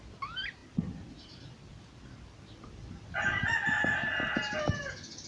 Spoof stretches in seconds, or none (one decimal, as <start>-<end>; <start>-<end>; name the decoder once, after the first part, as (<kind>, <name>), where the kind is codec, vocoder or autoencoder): none